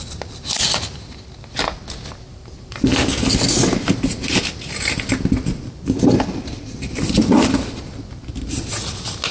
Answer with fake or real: real